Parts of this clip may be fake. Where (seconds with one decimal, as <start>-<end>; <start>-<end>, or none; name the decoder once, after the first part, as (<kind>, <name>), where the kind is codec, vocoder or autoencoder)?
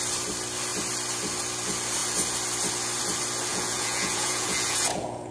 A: 3.5-5.3 (vocoder, Vocos)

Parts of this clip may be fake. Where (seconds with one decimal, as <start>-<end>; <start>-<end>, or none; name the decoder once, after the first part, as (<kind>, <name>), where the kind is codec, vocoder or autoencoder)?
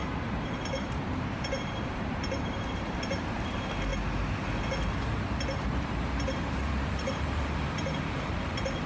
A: 0.0-3.9 (vocoder, BigVGAN v2); 5.2-8.9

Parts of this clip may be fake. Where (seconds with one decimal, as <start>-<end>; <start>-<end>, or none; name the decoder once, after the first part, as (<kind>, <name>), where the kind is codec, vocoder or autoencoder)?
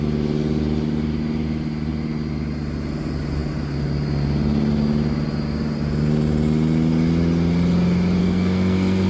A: 8.2-9.1 (codec, SNAC)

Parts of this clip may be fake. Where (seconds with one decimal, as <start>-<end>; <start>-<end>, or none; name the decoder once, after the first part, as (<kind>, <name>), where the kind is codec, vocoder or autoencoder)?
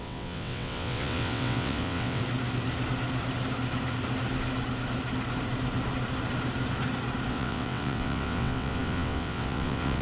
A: 0.0-2.2 (vocoder, WaveNeXt); 7.3-10.0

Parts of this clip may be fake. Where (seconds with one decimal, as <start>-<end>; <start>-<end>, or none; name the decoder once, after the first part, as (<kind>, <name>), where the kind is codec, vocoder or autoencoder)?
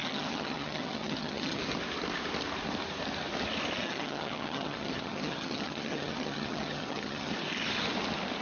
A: 0.0-1.6 (vocoder, HiFi-GAN); 3.8-7.3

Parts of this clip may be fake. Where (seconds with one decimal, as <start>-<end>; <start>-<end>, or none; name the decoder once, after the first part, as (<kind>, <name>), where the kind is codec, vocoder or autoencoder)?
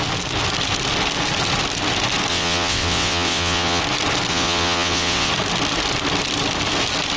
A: 2.3-3.8 (vocoder, WaveNeXt); 4.3-5.3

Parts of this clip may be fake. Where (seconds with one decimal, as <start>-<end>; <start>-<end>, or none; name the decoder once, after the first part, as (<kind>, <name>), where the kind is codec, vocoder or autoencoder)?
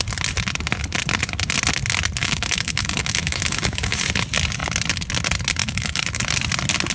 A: 2.2-4.0 (autoencoder, DAC-VAE); 5.6-6.2